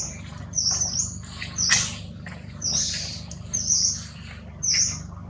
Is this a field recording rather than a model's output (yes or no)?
no